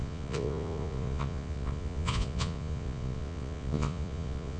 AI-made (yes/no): yes